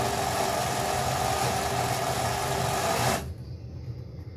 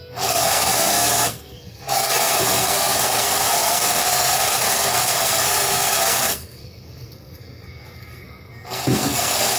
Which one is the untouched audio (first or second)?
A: first